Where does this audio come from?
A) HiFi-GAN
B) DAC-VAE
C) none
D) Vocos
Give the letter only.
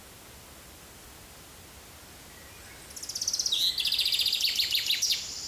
C